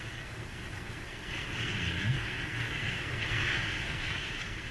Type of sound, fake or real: fake